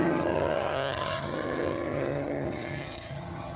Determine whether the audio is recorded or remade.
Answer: remade